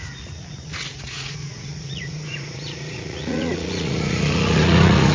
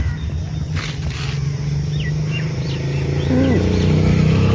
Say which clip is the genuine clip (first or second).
second